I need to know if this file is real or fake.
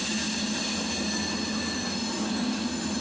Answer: real